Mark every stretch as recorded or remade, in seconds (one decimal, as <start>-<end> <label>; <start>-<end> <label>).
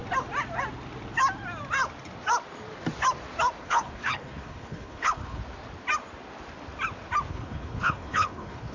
0.0-3.6 recorded; 3.6-5.4 remade; 5.4-7.3 recorded; 7.3-8.7 remade